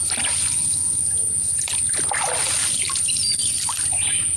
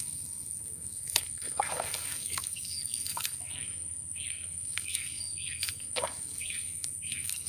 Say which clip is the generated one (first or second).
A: second